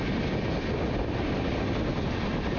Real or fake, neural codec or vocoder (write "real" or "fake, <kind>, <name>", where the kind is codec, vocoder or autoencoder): real